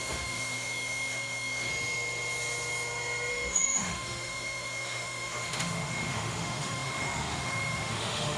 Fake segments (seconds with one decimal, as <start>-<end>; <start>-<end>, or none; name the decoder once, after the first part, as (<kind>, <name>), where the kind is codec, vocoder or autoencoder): 0.0-1.7 (autoencoder, DAC-VAE); 3.3-8.4